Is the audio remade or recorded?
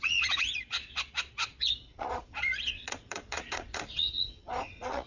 remade